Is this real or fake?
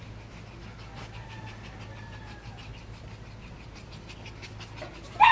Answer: real